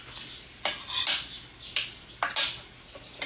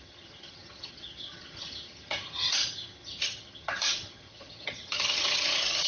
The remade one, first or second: second